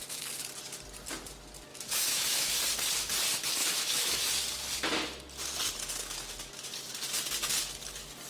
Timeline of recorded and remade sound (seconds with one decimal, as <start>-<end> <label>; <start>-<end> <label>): 0.0-1.7 recorded; 1.7-2.5 remade; 2.5-3.6 recorded; 3.6-4.3 remade; 4.3-8.3 recorded